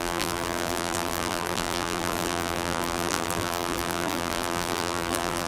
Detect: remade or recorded remade